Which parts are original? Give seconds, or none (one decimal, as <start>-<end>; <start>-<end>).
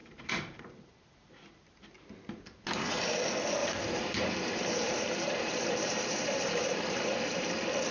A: 2.4-3.6; 7.5-7.9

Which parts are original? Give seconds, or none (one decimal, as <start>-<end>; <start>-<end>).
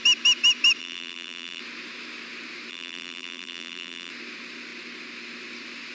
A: 0.0-0.8; 1.6-2.7; 4.1-5.9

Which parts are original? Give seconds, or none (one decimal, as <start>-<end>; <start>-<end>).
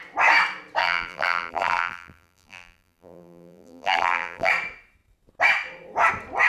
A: 0.0-0.8; 4.5-6.5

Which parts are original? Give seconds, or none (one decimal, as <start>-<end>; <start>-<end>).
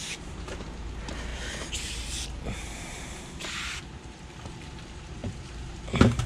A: 1.3-2.8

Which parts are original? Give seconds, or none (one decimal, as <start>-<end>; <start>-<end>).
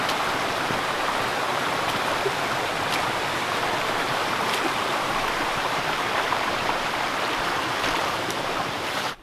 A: 0.0-1.3; 2.1-4.2